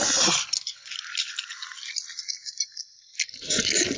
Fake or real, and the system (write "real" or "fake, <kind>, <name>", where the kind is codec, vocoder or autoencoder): real